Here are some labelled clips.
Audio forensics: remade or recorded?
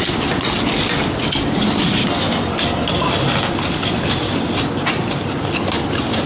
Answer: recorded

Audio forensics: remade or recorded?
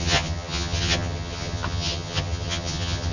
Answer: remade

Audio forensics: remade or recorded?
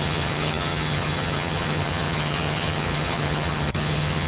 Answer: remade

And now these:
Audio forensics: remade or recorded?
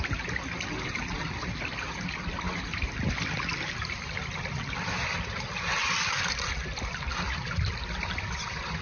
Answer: recorded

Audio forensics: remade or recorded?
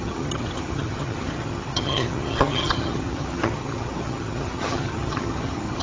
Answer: remade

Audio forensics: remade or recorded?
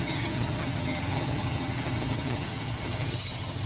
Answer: remade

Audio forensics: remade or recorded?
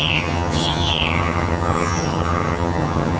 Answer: remade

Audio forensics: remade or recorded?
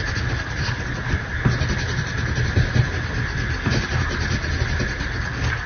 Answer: recorded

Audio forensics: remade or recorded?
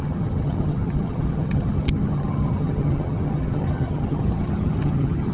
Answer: remade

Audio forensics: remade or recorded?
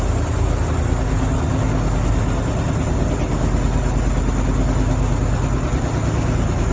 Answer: recorded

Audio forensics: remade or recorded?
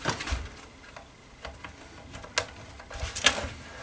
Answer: recorded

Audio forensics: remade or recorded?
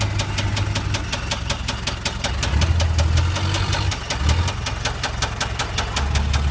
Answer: recorded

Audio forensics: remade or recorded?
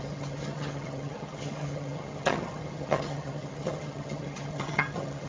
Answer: remade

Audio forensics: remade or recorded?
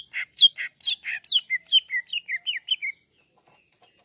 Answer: recorded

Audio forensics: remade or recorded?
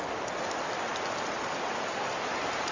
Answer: recorded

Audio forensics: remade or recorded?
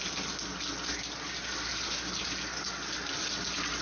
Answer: recorded